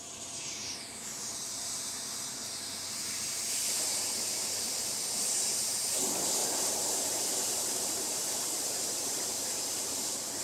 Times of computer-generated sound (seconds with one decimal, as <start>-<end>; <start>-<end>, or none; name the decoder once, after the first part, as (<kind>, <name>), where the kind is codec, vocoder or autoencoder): 0.0-10.4 (vocoder, BigVGAN v2)